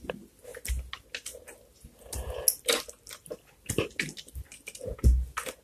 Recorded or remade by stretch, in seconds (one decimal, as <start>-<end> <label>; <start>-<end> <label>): 0.0-5.6 recorded